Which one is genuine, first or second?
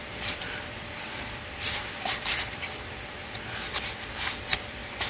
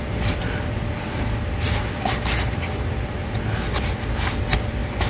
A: second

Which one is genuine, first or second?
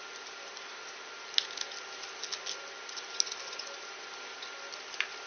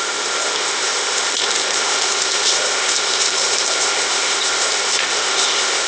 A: first